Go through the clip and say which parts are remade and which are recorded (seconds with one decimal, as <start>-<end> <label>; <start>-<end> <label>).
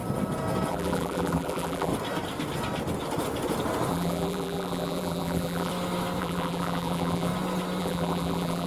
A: 0.0-0.7 recorded; 0.7-1.9 remade; 1.9-3.9 recorded; 3.9-5.7 remade; 5.7-6.2 recorded; 6.2-7.3 remade; 7.3-7.8 recorded; 7.8-8.7 remade